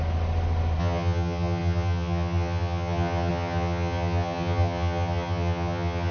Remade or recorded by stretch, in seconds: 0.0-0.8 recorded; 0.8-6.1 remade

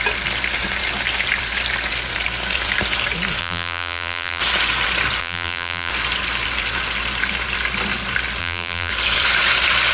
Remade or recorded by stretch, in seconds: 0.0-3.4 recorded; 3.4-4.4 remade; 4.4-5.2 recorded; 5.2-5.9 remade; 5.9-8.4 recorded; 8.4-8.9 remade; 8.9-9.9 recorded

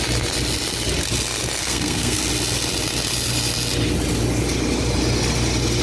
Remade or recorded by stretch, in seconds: 0.0-1.6 recorded; 1.6-2.2 remade; 2.2-5.8 recorded

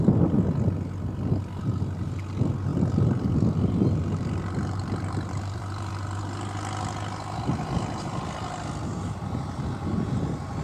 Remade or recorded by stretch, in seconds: 0.0-2.7 recorded; 2.7-6.2 remade; 6.2-10.6 recorded

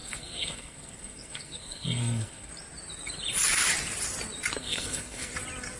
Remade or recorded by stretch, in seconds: 0.0-2.5 remade; 2.5-4.6 recorded; 4.6-5.3 remade; 5.3-5.8 recorded

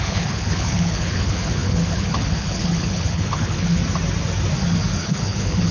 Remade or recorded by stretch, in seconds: 0.0-3.8 remade; 3.8-5.0 recorded; 5.0-5.7 remade

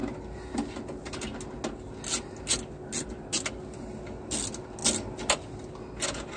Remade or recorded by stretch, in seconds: 0.0-6.4 recorded

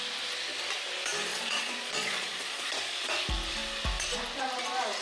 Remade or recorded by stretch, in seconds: 0.0-1.3 recorded; 1.3-3.1 remade; 3.1-5.0 recorded